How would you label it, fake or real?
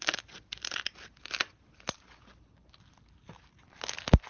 real